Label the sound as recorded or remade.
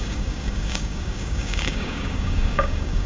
remade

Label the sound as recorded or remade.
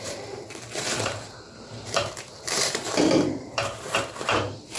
remade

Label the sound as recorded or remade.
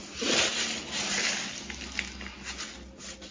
recorded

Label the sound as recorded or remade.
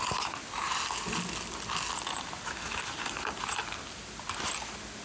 recorded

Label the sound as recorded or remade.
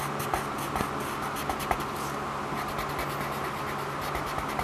recorded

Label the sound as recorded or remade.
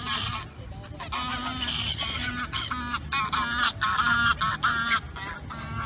recorded